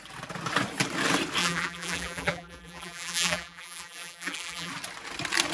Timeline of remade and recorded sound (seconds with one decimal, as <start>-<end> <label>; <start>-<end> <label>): 0.0-1.4 recorded; 1.4-4.7 remade; 4.7-5.5 recorded